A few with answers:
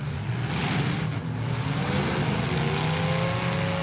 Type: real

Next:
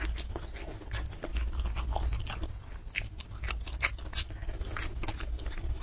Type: real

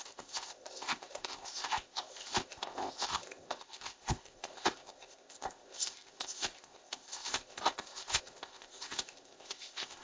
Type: fake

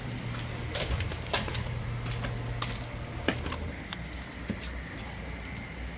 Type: real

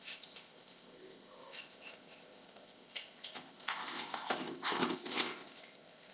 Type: fake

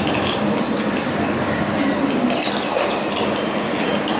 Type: real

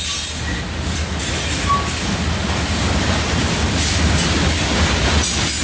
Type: real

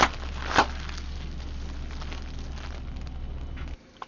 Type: real